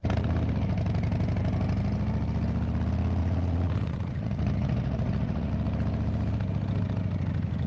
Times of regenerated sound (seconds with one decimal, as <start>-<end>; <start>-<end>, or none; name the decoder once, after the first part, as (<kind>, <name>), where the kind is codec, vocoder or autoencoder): 3.2-5.5 (vocoder, Vocos)